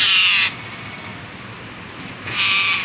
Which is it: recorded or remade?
recorded